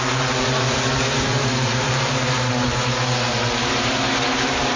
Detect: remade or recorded remade